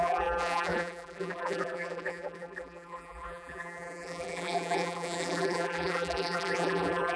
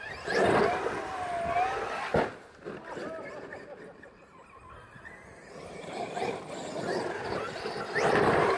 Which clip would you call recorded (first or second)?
second